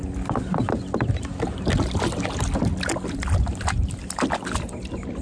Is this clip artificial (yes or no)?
no